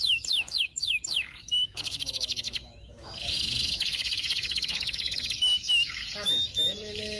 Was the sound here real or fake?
fake